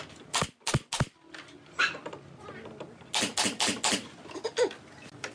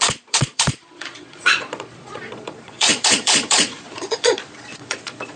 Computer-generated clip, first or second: second